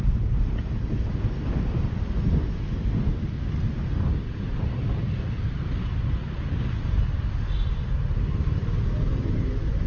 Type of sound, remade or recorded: recorded